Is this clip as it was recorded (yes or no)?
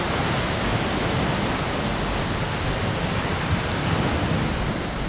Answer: yes